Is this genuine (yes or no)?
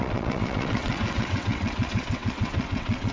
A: no